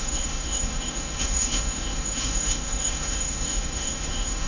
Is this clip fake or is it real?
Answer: fake